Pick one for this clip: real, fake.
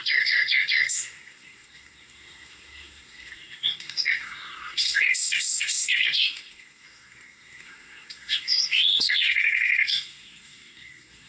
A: fake